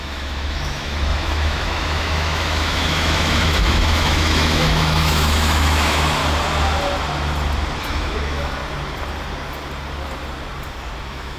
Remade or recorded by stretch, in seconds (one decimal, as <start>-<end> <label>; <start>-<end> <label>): 0.0-6.2 remade; 6.2-7.8 recorded; 7.8-8.6 remade; 8.6-11.0 recorded; 11.0-11.4 remade